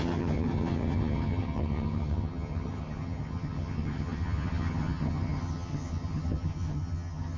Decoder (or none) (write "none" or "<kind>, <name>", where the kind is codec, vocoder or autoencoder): vocoder, HiFi-GAN